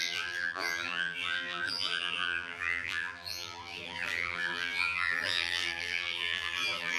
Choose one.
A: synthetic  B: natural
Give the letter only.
A